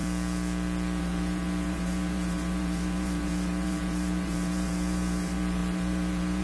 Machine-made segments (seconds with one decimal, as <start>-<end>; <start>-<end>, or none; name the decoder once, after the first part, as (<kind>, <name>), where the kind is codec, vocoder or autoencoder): 1.0-6.4 (vocoder, BigVGAN v2)